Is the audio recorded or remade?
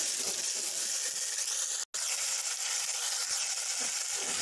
recorded